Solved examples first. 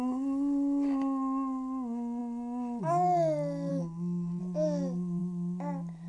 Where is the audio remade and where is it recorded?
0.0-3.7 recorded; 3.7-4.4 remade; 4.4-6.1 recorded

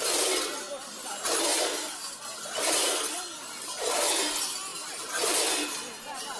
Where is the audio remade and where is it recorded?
0.0-6.4 recorded

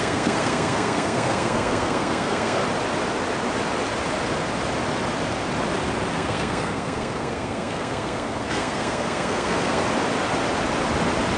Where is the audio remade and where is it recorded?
0.0-2.6 remade; 2.6-6.1 recorded; 6.1-9.8 remade; 9.8-11.4 recorded

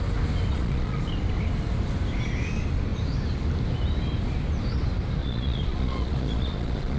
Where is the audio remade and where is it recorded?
0.0-0.5 recorded; 0.5-1.0 remade; 1.0-5.2 recorded; 5.2-7.0 remade

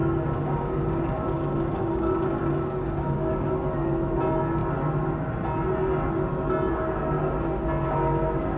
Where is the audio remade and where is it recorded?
0.0-3.5 remade; 3.5-8.6 recorded

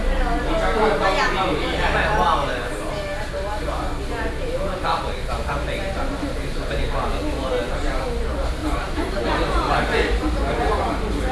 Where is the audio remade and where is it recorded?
0.0-8.6 recorded; 8.6-9.7 remade; 9.7-11.3 recorded

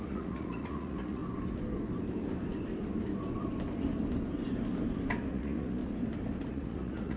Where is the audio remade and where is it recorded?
0.0-1.2 remade; 1.2-5.3 recorded; 5.3-5.8 remade; 5.8-6.5 recorded; 6.5-7.2 remade